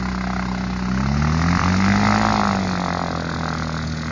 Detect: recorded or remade recorded